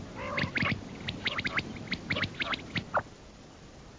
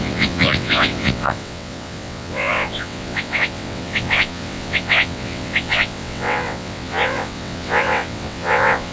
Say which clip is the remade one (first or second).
second